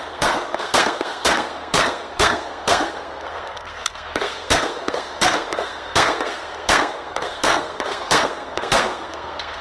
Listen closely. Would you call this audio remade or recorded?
remade